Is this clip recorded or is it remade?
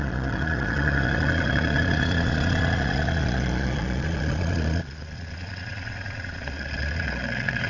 remade